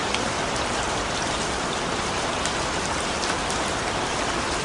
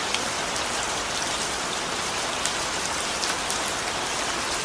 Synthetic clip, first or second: first